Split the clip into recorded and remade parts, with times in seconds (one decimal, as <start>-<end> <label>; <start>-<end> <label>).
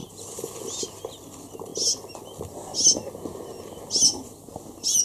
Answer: 0.0-5.0 recorded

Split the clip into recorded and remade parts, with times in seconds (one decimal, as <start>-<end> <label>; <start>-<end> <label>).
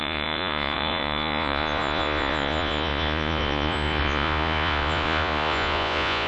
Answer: 0.0-6.3 remade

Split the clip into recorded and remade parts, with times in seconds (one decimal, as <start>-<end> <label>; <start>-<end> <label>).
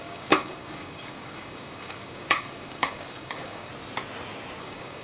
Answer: 0.0-3.7 remade; 3.7-4.6 recorded; 4.6-5.0 remade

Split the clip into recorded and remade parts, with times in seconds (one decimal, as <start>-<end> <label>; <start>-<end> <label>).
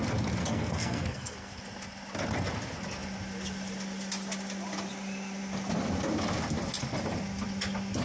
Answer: 0.0-0.4 recorded; 0.4-1.6 remade; 1.6-8.0 recorded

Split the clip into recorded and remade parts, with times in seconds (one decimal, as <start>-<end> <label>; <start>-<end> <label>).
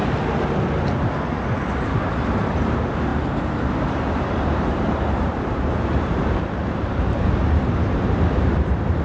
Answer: 0.0-1.7 recorded; 1.7-3.1 remade; 3.1-3.7 recorded; 3.7-9.0 remade